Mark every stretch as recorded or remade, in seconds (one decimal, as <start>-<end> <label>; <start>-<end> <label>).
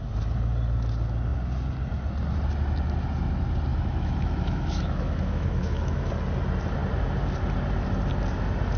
0.0-3.7 recorded; 3.7-6.1 remade; 6.1-8.8 recorded